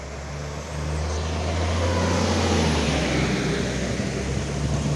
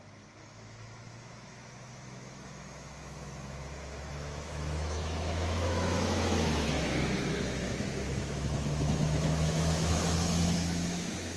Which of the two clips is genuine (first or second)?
first